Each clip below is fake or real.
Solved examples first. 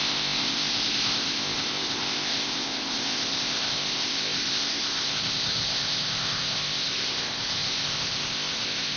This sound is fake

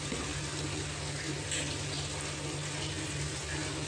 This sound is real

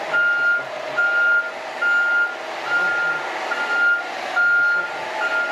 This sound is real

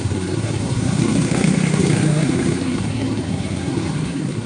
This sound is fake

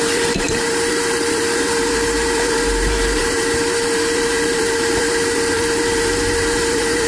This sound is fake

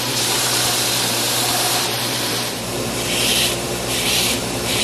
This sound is fake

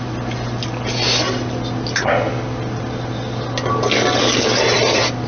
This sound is real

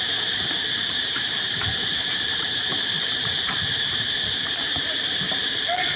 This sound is fake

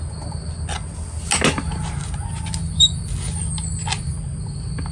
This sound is real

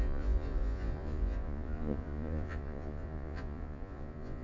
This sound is fake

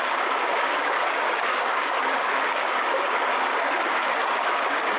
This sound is fake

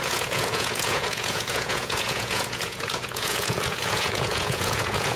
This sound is fake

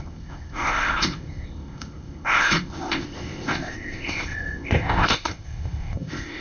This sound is fake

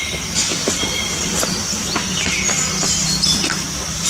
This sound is real